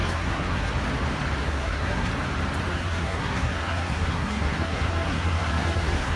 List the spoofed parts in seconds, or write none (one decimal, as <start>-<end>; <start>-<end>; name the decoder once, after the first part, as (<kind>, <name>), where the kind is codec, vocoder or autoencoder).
0.0-0.7 (codec, SNAC); 1.4-2.1; 2.7-6.2